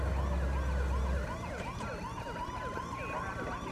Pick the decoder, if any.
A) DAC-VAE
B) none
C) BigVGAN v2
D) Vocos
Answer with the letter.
B